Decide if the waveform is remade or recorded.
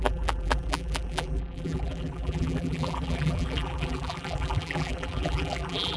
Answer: remade